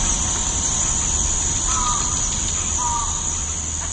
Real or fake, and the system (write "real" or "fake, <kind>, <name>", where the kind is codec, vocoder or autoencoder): real